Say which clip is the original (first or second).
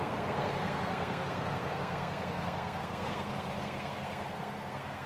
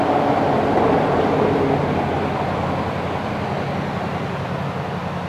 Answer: second